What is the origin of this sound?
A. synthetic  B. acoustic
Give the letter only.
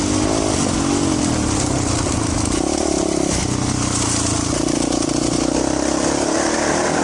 B